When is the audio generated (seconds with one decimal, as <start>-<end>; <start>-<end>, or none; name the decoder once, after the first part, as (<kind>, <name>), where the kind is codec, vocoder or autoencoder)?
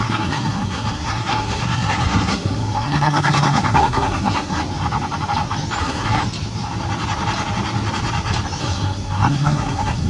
0.0-4.6 (codec, SNAC); 5.8-6.2; 8.6-10.1